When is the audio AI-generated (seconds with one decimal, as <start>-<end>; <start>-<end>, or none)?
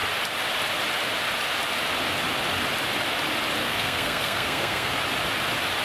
3.6-5.0